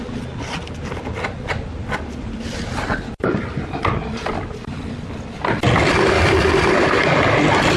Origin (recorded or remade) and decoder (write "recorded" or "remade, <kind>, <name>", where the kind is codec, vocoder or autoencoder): recorded